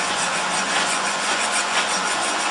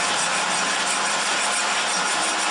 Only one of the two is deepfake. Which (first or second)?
first